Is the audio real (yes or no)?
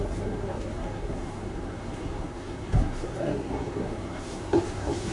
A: no